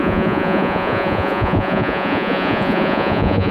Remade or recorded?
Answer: remade